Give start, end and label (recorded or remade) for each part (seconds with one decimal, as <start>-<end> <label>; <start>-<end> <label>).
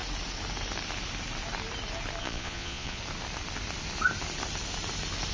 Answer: 0.0-2.2 recorded; 2.2-3.0 remade; 3.0-5.3 recorded